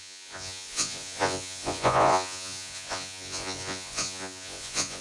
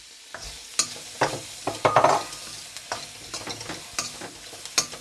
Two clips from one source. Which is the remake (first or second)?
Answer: first